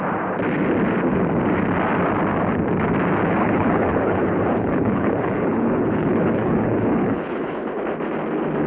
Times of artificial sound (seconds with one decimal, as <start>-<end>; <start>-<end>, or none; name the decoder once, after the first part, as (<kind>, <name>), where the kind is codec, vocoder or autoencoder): 3.4-7.8 (codec, HILCodec)